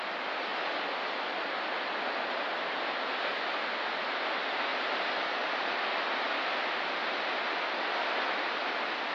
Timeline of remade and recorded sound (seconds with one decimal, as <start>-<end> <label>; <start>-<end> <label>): 0.0-4.7 recorded; 4.7-5.5 remade; 5.5-9.1 recorded